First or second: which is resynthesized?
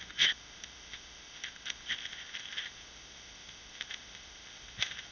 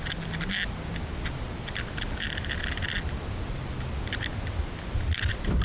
first